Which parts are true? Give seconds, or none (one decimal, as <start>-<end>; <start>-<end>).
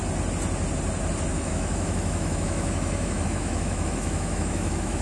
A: 0.0-1.3